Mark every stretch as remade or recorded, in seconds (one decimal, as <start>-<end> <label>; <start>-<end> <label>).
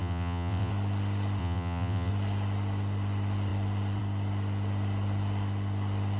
0.0-0.7 remade; 0.7-1.4 recorded; 1.4-2.1 remade; 2.1-6.2 recorded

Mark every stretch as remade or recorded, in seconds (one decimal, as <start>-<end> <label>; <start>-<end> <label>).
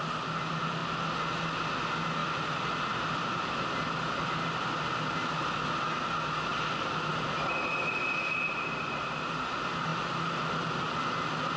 0.0-2.2 recorded; 2.2-4.7 remade; 4.7-6.5 recorded; 6.5-7.1 remade; 7.1-11.6 recorded